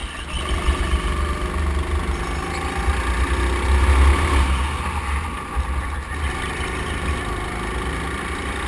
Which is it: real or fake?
real